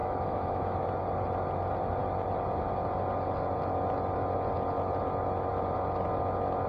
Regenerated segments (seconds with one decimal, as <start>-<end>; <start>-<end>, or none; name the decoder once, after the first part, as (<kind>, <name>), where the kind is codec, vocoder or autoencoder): 0.0-0.8 (autoencoder, DAC-VAE)